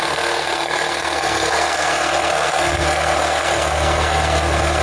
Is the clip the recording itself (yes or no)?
no